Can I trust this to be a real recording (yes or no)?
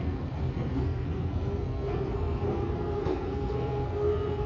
no